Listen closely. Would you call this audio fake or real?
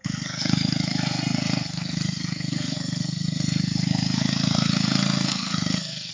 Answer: fake